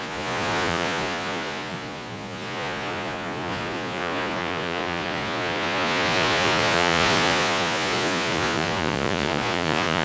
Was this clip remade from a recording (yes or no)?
yes